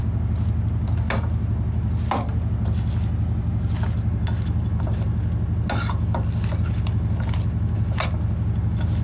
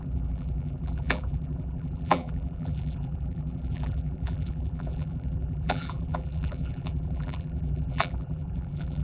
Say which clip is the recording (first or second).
first